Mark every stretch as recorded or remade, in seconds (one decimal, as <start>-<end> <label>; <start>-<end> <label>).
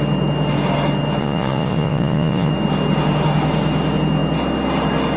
0.0-1.2 recorded; 1.2-2.5 remade; 2.5-5.2 recorded